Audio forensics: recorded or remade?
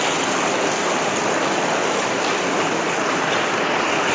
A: recorded